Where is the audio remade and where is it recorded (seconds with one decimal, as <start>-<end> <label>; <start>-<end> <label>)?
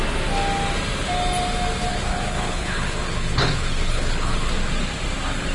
0.0-1.9 recorded; 1.9-4.5 remade; 4.5-5.5 recorded